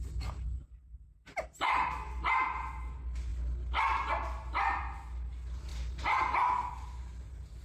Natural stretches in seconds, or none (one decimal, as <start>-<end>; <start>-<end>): 0.0-7.6